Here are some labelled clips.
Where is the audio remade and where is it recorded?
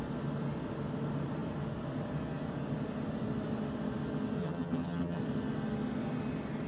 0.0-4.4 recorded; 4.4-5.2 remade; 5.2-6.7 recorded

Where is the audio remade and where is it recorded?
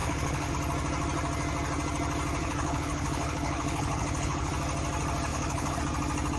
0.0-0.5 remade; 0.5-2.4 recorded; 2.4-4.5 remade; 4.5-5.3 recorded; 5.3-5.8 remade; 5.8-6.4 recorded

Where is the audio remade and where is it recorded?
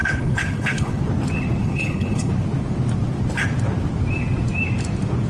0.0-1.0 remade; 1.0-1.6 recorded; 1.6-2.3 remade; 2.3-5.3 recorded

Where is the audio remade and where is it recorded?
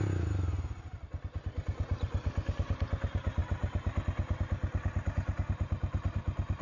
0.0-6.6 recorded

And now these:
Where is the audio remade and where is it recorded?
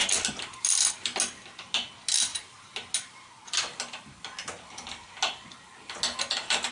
0.0-0.6 remade; 0.6-6.7 recorded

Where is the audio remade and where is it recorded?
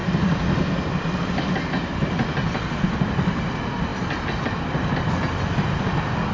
0.0-6.3 recorded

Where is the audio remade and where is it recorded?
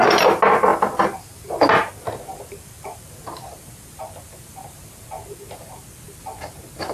0.0-6.9 recorded